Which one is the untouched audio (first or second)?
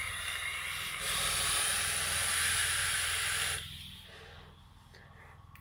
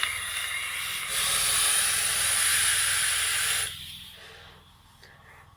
second